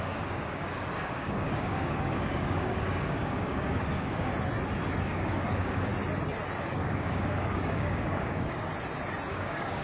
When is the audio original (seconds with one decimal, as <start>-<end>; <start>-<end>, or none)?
4.3-5.0; 5.9-6.6; 8.7-9.3